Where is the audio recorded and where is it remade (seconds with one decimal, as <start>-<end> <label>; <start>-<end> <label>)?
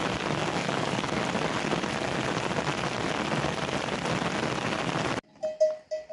0.0-0.4 recorded; 0.4-1.2 remade; 1.2-6.1 recorded